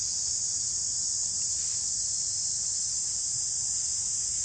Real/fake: real